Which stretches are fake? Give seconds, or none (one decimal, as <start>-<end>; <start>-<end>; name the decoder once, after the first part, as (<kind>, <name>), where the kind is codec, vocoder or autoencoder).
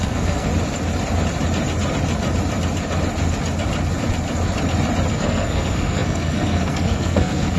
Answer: 0.0-0.5 (codec, SNAC); 5.1-7.6